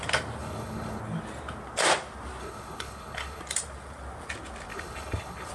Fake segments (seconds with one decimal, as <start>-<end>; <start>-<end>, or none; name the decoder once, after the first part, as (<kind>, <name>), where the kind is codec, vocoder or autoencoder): 0.4-1.0 (codec, HILCodec); 2.4-3.4; 4.7-5.5

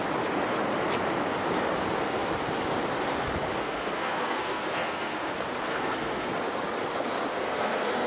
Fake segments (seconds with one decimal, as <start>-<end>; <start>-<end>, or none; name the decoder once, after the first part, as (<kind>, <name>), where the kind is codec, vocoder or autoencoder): 3.6-5.3 (codec, SNAC); 5.7-6.3; 7.3-8.1

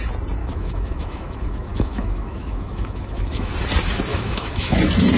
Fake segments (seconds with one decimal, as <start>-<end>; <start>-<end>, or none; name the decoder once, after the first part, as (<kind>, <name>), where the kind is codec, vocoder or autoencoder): 0.4-3.5 (autoencoder, DAC-VAE); 4.1-4.8

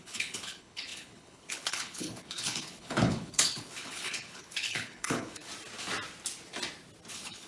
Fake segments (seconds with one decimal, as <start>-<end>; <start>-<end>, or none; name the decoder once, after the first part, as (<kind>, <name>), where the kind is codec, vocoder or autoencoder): 0.0-5.5 (codec, HILCodec); 7.1-7.5

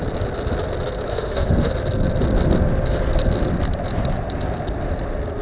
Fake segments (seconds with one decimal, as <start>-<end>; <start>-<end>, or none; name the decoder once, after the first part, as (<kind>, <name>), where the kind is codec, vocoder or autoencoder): 1.1-1.7 (autoencoder, DAC-VAE)